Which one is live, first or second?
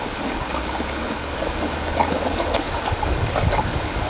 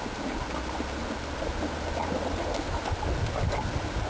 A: second